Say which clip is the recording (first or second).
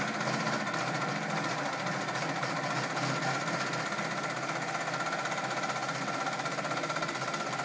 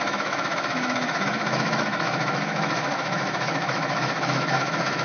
first